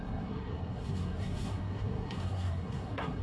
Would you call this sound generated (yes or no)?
yes